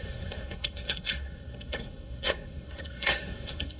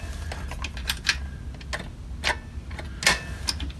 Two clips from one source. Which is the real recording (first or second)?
second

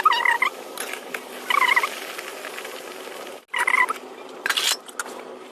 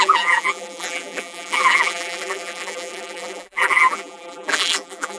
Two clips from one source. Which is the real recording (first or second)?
first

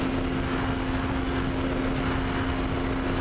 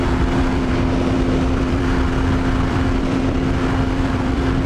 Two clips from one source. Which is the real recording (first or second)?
first